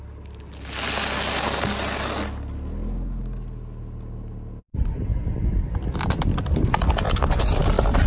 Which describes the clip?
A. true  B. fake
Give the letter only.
A